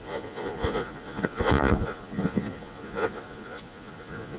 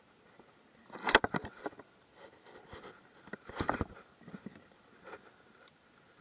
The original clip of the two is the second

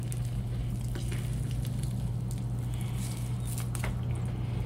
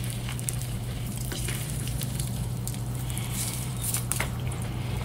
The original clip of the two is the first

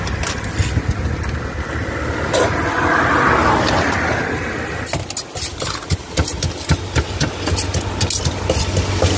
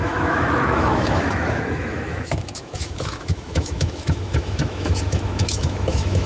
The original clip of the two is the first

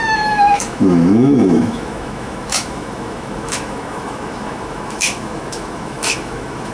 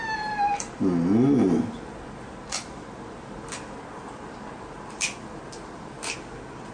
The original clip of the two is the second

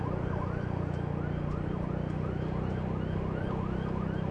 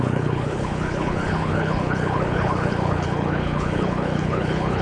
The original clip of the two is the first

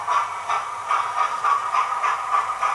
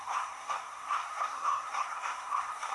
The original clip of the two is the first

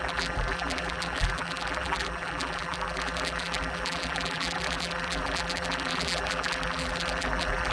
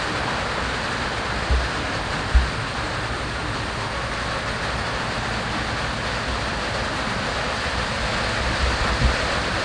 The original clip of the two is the second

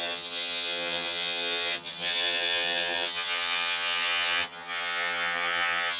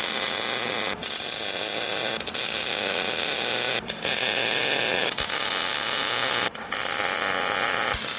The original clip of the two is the second